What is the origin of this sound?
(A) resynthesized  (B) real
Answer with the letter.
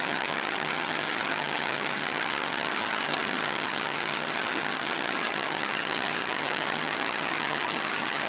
A